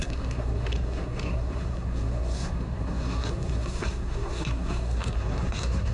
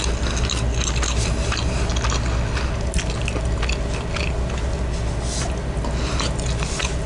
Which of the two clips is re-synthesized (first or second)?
first